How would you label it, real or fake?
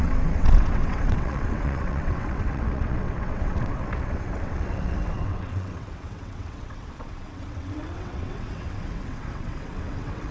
fake